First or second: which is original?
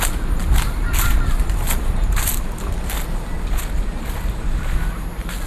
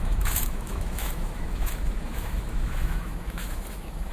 first